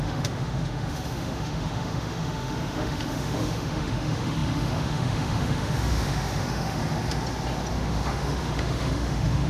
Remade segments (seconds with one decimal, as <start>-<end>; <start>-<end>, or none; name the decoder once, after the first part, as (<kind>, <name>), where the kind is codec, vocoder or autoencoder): 0.0-6.8 (autoencoder, DAC-VAE); 7.7-9.5